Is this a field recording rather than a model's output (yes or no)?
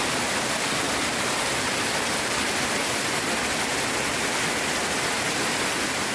yes